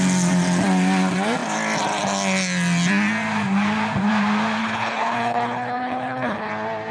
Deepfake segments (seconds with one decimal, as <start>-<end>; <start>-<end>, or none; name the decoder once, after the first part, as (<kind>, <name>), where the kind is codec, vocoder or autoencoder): 4.6-6.5 (codec, HILCodec)